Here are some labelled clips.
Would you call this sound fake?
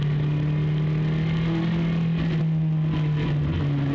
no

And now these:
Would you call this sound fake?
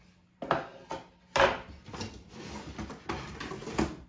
no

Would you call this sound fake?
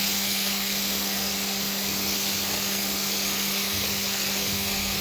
yes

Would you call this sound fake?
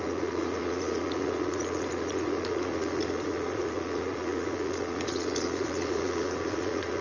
yes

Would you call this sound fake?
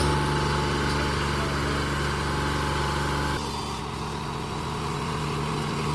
no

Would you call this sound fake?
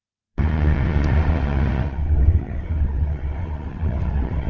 yes